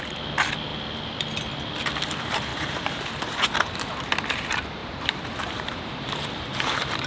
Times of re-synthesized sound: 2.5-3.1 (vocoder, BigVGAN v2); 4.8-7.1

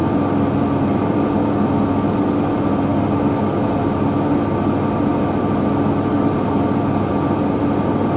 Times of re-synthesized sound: none

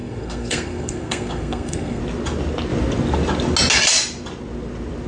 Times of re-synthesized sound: 0.0-2.0 (codec, SNAC)